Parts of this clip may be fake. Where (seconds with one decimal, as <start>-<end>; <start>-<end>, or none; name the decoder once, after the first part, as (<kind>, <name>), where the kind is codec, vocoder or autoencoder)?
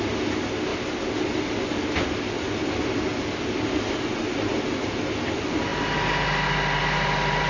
none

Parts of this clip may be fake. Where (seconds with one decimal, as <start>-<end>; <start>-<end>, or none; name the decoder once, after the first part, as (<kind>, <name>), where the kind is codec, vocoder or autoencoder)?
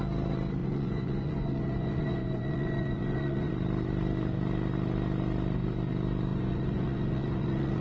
0.6-3.5 (vocoder, Vocos); 6.3-7.8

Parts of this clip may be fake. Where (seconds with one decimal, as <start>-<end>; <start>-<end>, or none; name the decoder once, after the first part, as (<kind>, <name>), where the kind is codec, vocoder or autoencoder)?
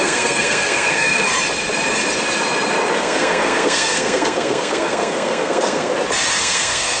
0.0-1.3 (codec, SNAC); 3.0-5.9; 6.4-7.0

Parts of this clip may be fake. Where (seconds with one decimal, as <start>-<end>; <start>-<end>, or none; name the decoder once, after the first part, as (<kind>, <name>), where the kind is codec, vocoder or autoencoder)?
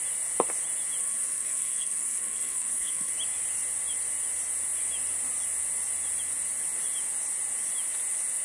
1.0-3.1 (codec, SNAC)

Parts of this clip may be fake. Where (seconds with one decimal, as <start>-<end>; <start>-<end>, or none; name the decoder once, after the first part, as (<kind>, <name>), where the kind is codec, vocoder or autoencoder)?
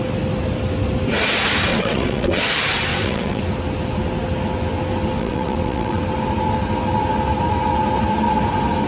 1.7-2.4 (vocoder, WaveNeXt); 2.9-3.4; 5.2-6.0